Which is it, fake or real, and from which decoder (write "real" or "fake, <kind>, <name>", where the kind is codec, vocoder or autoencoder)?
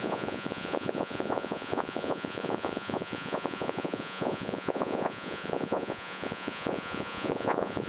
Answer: fake, vocoder, Vocos